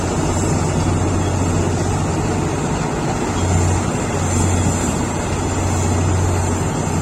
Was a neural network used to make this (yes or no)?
no